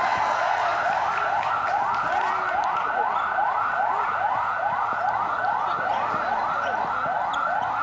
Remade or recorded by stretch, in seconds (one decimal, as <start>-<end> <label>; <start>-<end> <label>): 0.0-7.8 recorded